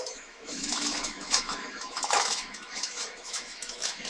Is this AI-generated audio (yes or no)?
yes